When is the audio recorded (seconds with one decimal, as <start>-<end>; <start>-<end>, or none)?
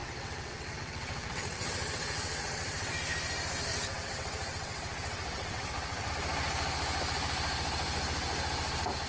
2.9-3.7; 6.1-9.1